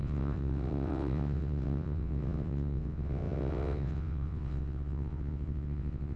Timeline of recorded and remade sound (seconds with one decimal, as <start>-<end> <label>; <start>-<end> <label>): 0.0-6.2 remade

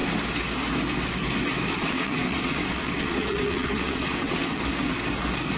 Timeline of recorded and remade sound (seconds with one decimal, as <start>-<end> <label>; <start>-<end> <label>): 0.0-1.7 recorded; 1.7-4.6 remade; 4.6-5.6 recorded

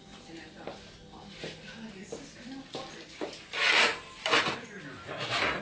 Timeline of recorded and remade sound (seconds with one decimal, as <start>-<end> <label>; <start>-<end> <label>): 0.0-5.6 recorded

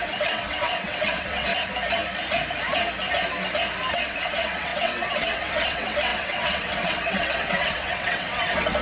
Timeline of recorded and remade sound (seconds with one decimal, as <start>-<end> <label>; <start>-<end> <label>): 0.0-1.5 remade; 1.5-3.9 recorded; 3.9-8.8 remade

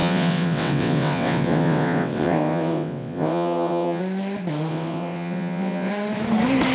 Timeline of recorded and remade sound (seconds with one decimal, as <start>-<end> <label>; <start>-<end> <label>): 0.0-4.0 remade; 4.0-4.7 recorded; 4.7-5.9 remade; 5.9-6.7 recorded

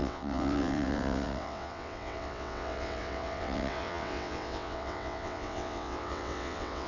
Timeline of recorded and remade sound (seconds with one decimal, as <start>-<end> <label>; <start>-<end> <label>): 0.0-6.9 remade

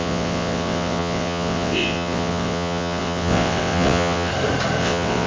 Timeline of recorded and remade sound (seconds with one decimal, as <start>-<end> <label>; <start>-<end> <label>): 0.0-4.3 remade; 4.3-4.8 recorded; 4.8-5.3 remade